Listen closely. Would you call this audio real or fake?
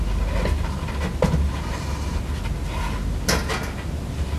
real